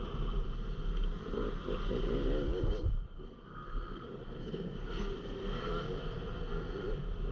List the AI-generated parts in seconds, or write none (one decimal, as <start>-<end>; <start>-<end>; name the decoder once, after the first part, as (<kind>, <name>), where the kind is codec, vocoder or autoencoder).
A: 3.1-5.7 (codec, SNAC)